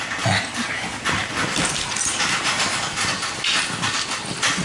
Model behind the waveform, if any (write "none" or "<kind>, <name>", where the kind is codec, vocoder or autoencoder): none